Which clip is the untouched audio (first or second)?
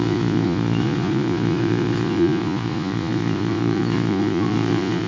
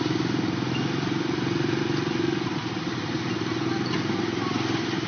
second